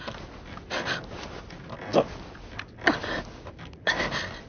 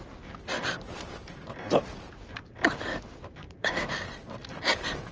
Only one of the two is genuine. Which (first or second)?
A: first